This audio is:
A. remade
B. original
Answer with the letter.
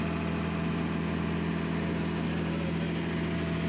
B